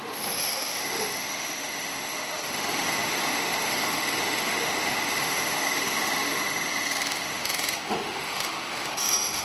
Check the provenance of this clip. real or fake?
fake